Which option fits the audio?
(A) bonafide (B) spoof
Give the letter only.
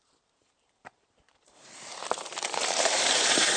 B